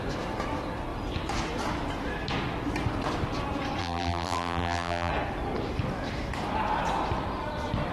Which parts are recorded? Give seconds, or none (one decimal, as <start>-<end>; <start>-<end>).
0.0-3.8; 5.1-7.9